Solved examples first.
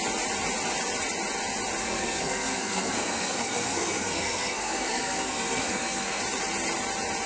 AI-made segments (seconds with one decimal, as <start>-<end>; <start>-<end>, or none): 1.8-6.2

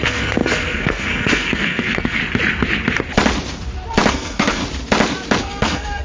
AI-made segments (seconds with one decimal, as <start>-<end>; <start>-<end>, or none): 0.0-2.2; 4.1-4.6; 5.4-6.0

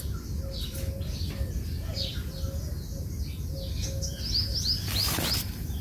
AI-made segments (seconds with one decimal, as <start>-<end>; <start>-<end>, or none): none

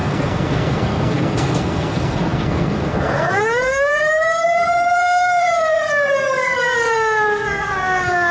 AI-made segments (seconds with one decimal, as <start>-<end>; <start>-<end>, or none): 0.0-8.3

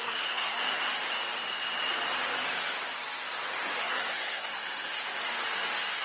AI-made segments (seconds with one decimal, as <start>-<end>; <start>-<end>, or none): 0.0-0.6; 3.8-5.0